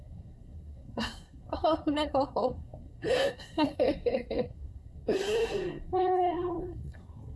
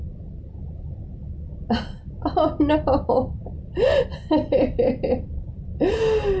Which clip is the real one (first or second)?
second